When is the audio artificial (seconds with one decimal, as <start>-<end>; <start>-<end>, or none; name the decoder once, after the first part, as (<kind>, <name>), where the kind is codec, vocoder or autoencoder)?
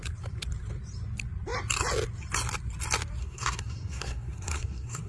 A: 3.2-5.1 (codec, SNAC)